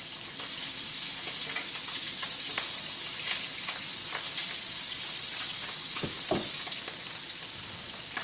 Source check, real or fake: real